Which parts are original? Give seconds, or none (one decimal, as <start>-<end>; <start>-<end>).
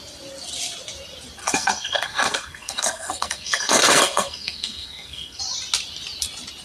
0.0-1.4; 5.4-6.6